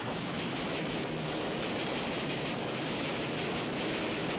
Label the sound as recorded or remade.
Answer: remade